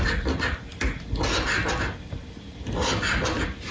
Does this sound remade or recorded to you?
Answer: recorded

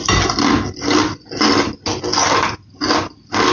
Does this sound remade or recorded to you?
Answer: recorded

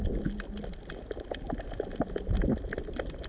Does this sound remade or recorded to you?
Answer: recorded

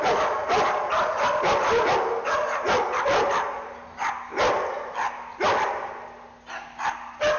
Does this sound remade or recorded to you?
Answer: recorded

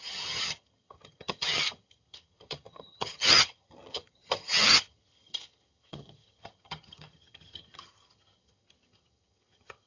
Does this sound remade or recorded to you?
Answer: remade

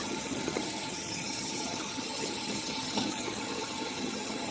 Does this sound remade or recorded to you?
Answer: remade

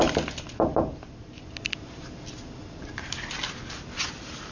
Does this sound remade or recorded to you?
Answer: recorded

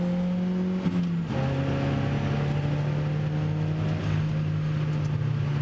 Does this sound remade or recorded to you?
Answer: recorded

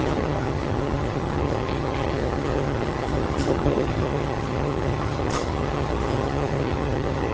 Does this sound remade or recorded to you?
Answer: remade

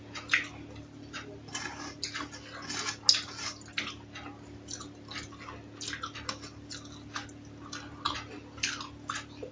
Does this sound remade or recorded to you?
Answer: recorded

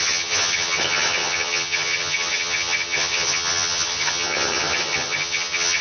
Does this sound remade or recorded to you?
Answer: remade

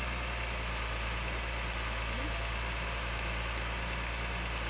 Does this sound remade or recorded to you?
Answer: recorded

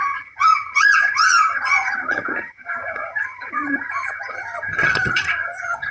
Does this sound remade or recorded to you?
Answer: remade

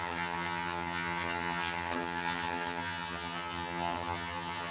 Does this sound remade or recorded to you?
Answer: remade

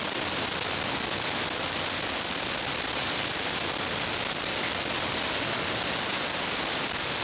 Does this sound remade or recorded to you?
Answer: recorded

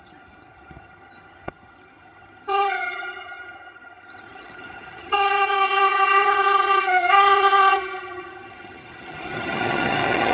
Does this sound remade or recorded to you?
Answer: remade